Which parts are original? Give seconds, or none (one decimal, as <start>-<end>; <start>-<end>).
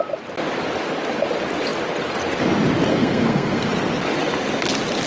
0.0-2.9; 3.7-5.1